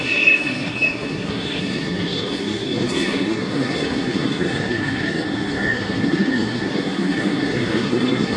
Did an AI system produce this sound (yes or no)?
yes